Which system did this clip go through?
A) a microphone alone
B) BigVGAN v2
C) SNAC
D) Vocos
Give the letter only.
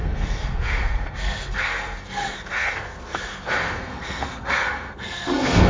C